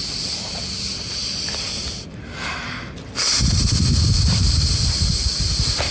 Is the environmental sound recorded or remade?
remade